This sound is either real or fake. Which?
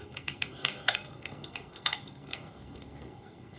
fake